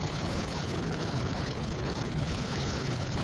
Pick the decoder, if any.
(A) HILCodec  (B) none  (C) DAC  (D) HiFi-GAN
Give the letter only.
A